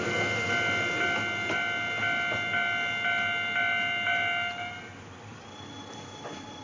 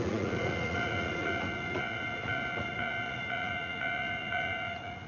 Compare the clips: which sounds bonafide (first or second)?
first